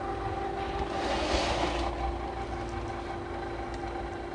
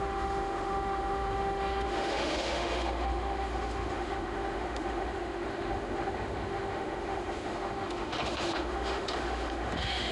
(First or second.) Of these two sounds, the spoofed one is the second